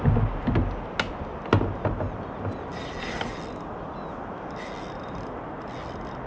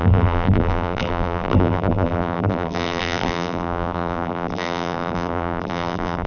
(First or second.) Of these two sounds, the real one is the first